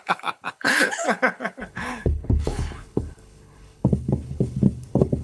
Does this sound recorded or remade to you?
remade